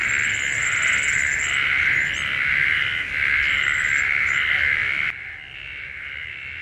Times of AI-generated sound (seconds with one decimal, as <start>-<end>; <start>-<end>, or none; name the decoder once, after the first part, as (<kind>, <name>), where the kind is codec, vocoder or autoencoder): none